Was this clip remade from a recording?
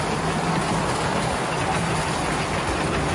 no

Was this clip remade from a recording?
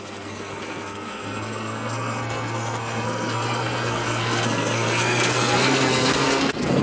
yes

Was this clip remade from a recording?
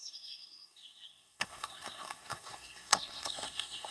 yes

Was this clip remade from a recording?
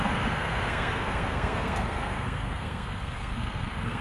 yes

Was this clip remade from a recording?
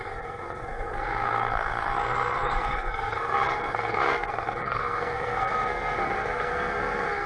yes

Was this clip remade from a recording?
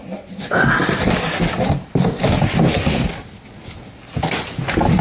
no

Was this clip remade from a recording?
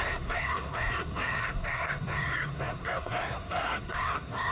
yes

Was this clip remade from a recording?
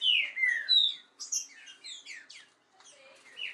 no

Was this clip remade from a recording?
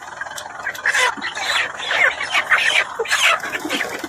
no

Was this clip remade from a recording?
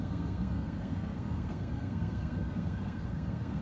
yes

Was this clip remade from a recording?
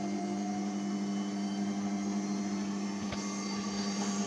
no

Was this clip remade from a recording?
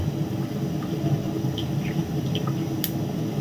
no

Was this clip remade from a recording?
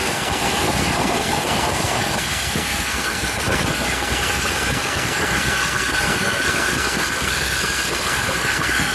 yes